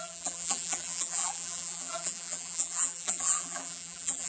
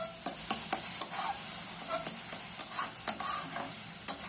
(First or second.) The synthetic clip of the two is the first